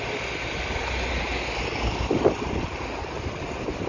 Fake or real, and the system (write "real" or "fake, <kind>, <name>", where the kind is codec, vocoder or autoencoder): real